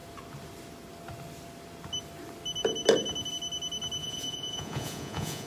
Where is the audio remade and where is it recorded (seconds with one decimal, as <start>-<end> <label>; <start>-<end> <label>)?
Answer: 0.0-4.0 recorded; 4.0-5.5 remade